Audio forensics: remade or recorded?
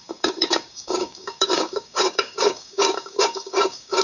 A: remade